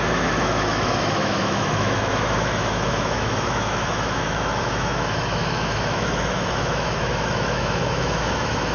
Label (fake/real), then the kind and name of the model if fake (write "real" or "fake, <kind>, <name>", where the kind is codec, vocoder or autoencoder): fake, autoencoder, DAC-VAE